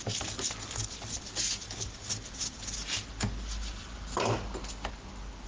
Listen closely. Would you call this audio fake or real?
real